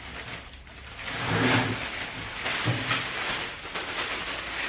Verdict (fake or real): real